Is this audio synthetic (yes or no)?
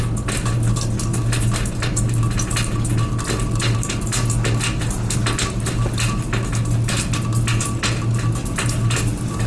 no